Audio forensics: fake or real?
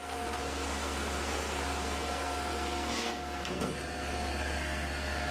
fake